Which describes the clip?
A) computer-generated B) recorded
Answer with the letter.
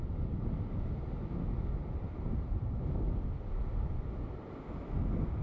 B